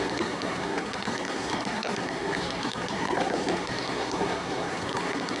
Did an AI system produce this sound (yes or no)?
yes